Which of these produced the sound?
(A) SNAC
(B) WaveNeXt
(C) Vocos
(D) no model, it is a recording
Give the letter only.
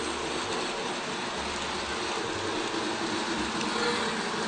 D